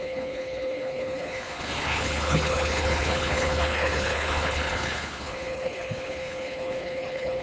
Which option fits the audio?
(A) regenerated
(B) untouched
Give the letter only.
A